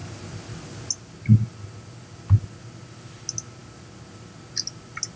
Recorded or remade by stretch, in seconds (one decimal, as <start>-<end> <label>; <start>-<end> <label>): 0.0-5.2 recorded